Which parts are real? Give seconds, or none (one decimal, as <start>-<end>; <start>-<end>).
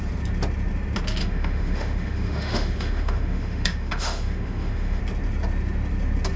0.0-1.2; 5.0-6.4